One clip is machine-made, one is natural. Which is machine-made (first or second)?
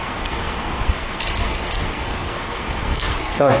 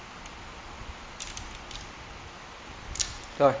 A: first